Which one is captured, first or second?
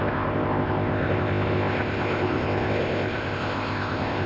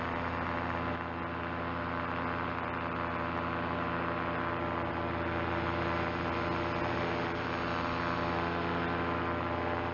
second